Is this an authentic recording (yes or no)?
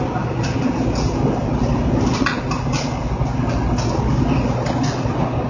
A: yes